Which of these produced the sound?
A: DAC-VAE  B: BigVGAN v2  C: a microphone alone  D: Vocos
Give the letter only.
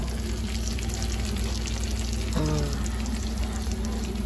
C